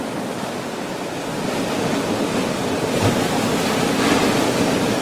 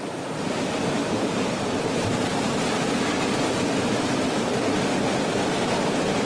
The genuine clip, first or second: first